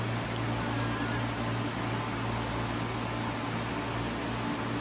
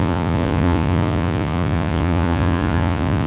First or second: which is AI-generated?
second